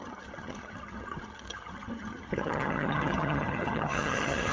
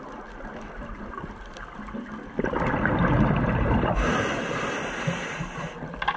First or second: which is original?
second